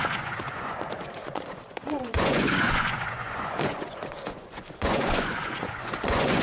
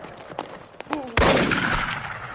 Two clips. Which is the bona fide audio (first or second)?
second